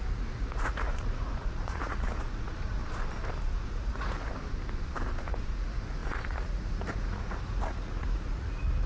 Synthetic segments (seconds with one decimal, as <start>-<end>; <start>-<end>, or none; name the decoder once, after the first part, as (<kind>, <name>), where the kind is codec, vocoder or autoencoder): 0.0-2.8 (vocoder, Vocos); 3.4-4.3; 5.2-8.9